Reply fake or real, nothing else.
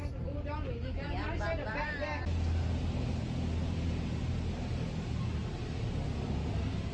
real